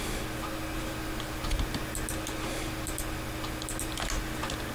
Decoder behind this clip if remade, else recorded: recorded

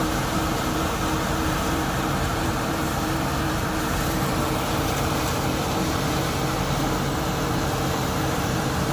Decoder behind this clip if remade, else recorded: remade, vocoder, BigVGAN v2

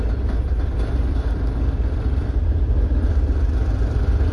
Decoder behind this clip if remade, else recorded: remade, vocoder, BigVGAN v2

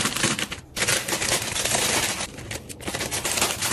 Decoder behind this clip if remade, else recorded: remade, vocoder, BigVGAN v2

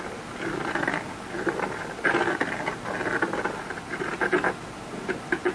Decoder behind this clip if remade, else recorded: recorded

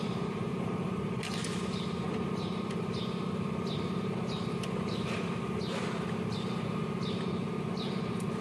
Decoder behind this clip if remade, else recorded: remade, vocoder, BigVGAN v2